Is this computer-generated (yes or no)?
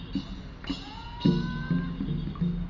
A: no